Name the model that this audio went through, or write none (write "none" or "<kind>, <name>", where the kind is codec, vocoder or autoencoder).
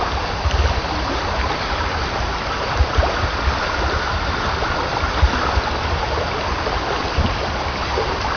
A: none